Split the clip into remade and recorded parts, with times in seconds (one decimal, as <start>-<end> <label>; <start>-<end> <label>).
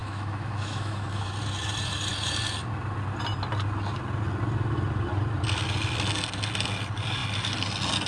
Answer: 0.0-1.3 remade; 1.3-8.1 recorded